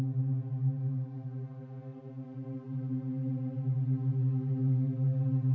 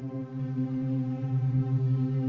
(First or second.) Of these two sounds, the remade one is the second